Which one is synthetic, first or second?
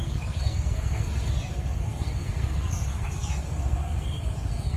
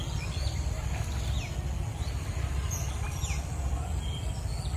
first